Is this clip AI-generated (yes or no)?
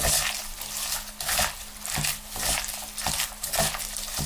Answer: no